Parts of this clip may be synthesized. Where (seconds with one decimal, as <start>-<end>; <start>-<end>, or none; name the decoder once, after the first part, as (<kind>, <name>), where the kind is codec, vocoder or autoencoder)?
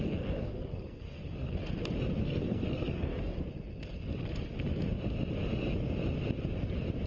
0.0-1.6 (codec, SNAC); 2.2-3.1